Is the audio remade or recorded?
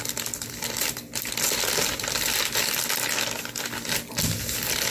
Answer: recorded